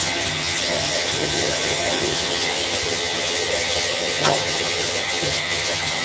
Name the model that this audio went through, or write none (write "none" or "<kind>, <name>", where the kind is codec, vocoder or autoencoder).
vocoder, HiFi-GAN